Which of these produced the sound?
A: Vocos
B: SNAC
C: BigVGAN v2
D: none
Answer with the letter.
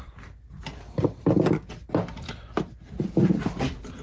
D